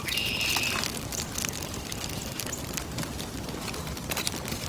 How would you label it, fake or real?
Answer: real